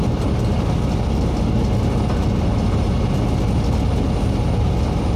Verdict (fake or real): real